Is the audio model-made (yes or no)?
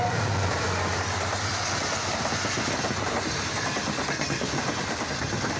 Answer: no